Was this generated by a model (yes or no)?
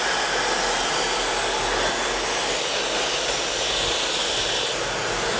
no